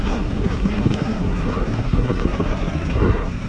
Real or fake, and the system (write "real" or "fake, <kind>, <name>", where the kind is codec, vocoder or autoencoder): fake, codec, SNAC